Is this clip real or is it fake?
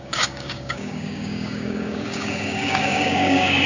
fake